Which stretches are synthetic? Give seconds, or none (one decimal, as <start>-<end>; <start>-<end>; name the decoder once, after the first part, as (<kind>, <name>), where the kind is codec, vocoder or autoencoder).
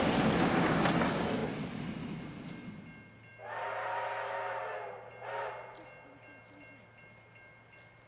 1.4-2.2 (vocoder, BigVGAN v2)